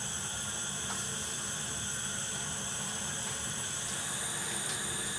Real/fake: real